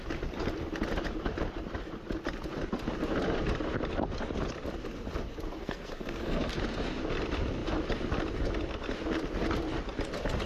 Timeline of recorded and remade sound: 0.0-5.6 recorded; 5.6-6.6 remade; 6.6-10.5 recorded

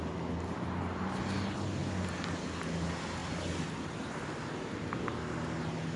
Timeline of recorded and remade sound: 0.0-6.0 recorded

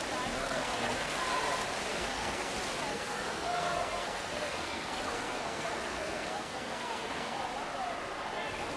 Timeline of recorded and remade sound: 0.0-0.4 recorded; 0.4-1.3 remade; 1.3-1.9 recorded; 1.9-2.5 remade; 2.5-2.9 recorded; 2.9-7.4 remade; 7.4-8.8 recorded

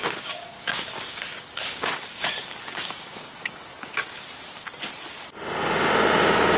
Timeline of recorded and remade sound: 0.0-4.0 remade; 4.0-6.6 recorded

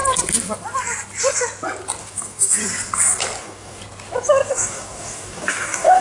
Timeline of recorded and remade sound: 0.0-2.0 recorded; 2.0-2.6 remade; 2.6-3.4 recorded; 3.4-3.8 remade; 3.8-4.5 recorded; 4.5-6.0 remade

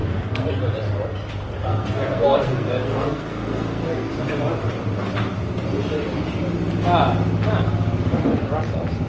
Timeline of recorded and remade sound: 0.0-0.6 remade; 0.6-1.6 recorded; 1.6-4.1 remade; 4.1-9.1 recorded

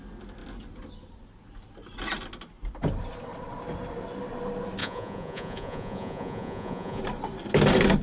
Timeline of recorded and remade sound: 0.0-4.8 recorded; 4.8-7.0 remade; 7.0-8.0 recorded